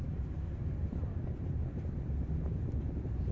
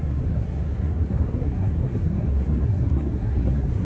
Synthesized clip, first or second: second